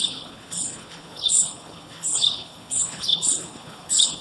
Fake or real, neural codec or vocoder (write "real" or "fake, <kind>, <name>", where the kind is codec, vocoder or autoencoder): fake, codec, HILCodec